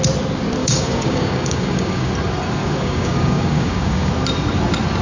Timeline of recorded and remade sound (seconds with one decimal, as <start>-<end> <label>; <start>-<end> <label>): 0.0-0.6 recorded; 0.6-2.1 remade; 2.1-2.6 recorded; 2.6-4.1 remade; 4.1-5.0 recorded